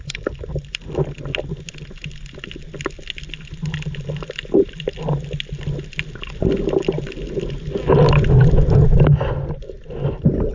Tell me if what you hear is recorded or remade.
recorded